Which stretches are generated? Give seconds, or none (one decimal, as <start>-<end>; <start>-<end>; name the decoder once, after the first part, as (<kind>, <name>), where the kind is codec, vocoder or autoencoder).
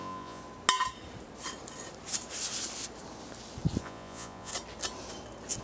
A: 0.0-0.4 (vocoder, Vocos); 3.8-4.5